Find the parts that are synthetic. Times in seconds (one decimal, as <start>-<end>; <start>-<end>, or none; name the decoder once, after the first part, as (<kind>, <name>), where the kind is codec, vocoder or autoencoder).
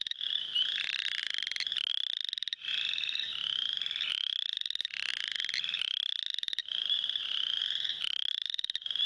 none